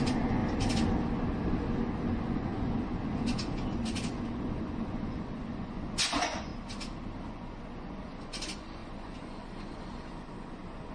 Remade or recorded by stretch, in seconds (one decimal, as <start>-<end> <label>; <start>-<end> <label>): 0.0-0.4 remade; 0.4-2.1 recorded; 2.1-6.5 remade; 6.5-7.3 recorded; 7.3-10.9 remade